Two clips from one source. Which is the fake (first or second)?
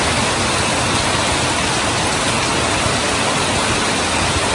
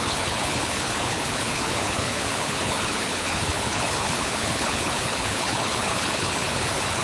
second